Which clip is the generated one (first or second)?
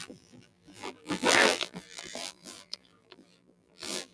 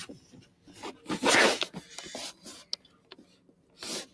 first